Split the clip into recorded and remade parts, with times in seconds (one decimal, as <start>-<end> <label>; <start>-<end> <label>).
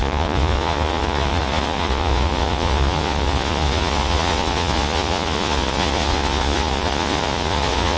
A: 0.0-8.0 remade